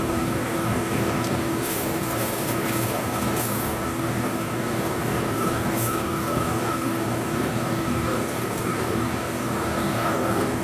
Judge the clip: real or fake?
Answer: fake